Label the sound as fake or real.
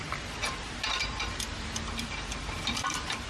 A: real